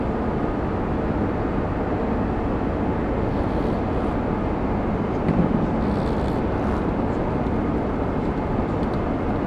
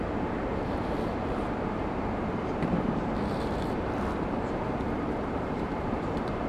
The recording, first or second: first